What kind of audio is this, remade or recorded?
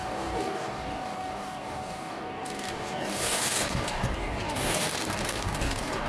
remade